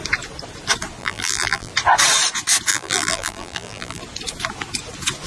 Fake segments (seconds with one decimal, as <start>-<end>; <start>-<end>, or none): 1.0-1.7; 2.7-4.0

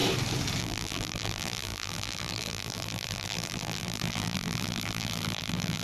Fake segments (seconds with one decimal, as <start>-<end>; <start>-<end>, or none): 0.6-5.8

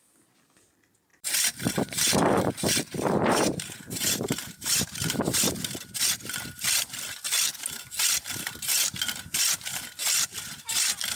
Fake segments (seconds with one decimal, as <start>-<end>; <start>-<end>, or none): 1.1-6.0

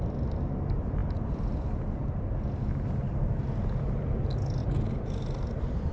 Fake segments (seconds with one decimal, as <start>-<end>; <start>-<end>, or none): 4.6-5.9

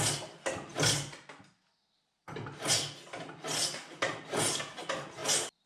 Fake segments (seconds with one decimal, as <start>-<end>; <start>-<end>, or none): none

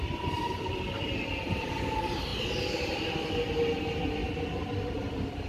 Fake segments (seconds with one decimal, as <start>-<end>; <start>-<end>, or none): 0.0-2.3